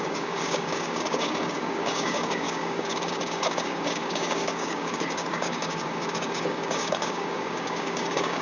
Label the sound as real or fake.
fake